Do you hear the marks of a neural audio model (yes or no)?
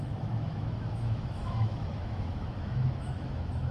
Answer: yes